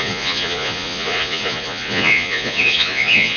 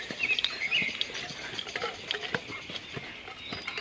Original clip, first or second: second